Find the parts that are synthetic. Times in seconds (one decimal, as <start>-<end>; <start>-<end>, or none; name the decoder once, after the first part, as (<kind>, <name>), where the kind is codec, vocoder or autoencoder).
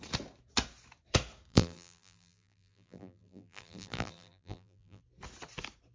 1.5-5.0 (vocoder, BigVGAN v2)